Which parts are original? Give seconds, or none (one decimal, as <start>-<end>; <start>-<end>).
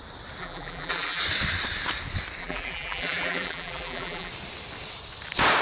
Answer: 0.0-0.4; 1.2-2.4; 4.3-5.6